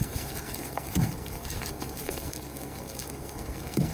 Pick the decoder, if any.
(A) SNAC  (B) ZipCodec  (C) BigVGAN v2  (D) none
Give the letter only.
A